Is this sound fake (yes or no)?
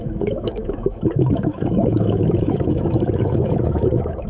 yes